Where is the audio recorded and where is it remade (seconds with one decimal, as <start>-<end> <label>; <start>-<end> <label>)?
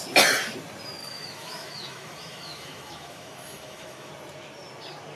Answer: 0.0-1.0 recorded; 1.0-4.1 remade; 4.1-5.2 recorded